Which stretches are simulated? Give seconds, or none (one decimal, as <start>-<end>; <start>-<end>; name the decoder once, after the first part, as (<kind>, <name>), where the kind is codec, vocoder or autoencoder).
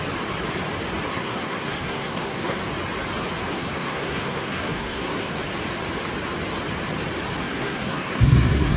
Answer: 1.1-2.6 (codec, SNAC); 3.5-5.4; 7.4-8.8